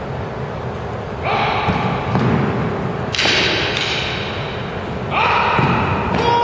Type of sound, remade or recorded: recorded